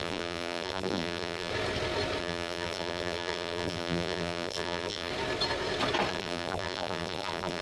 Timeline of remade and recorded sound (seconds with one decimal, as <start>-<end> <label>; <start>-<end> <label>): 0.0-1.5 remade; 1.5-2.2 recorded; 2.2-5.1 remade; 5.1-6.1 recorded; 6.1-7.6 remade